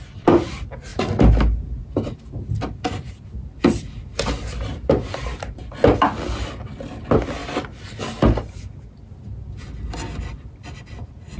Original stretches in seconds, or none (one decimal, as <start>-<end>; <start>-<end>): 0.0-7.4; 8.0-11.4